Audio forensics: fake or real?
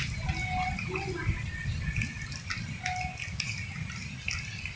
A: real